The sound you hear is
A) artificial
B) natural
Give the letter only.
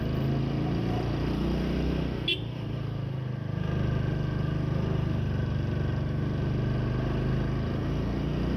B